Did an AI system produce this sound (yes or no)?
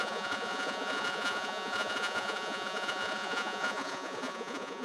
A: yes